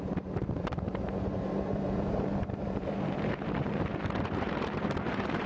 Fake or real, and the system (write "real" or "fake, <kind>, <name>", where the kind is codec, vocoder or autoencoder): fake, vocoder, BigVGAN v2